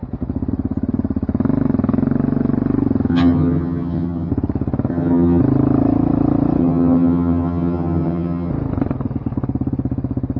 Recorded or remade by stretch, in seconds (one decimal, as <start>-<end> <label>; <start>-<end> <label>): 0.0-3.1 recorded; 3.1-4.3 remade; 4.3-4.9 recorded; 4.9-5.4 remade; 5.4-6.6 recorded; 6.6-8.5 remade; 8.5-10.4 recorded